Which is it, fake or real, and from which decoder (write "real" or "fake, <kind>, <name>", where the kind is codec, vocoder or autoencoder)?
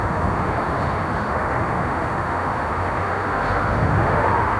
fake, autoencoder, DAC-VAE